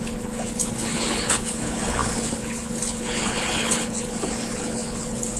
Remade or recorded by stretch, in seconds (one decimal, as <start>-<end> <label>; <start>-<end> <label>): 0.0-5.4 remade

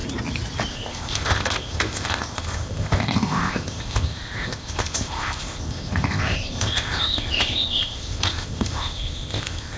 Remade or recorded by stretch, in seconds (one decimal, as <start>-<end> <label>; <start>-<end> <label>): 0.0-0.7 recorded; 0.7-9.8 remade

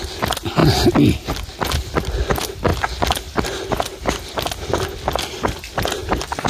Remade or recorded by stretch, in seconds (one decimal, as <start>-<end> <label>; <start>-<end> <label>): 0.0-6.5 recorded

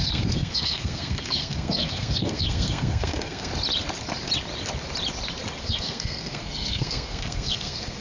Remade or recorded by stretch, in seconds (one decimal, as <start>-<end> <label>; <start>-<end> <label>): 0.0-3.5 remade; 3.5-5.6 recorded; 5.6-8.0 remade

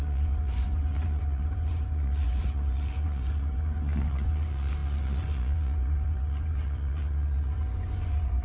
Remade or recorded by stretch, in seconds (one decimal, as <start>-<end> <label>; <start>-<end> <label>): 0.0-8.4 remade

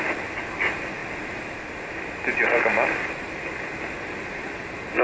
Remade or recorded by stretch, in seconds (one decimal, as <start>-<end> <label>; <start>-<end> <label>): 0.0-5.0 recorded

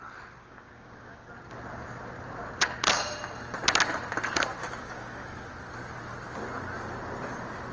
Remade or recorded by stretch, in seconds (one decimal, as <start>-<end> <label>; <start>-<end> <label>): 0.0-0.4 recorded; 0.4-1.3 remade; 1.3-4.6 recorded; 4.6-5.5 remade; 5.5-7.7 recorded